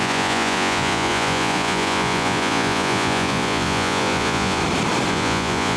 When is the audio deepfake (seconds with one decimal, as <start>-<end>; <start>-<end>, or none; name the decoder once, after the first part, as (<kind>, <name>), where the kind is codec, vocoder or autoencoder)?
0.0-4.6 (vocoder, Vocos); 5.1-5.8